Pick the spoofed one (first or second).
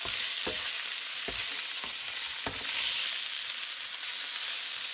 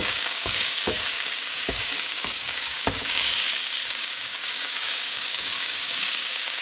second